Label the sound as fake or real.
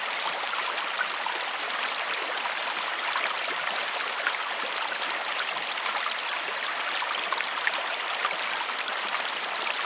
real